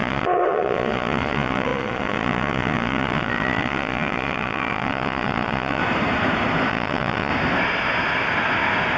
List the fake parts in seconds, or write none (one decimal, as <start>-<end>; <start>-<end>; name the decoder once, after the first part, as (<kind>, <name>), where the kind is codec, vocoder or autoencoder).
0.0-5.8 (vocoder, Vocos); 6.7-7.3

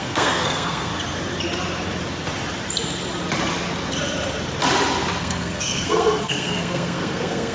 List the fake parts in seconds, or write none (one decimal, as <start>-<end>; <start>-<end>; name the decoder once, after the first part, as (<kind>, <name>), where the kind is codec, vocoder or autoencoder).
0.0-0.9 (codec, SNAC); 5.2-7.5